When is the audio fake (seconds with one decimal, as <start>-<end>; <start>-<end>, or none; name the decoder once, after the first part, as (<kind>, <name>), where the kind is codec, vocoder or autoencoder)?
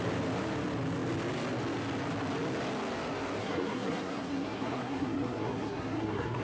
3.4-6.4 (codec, SNAC)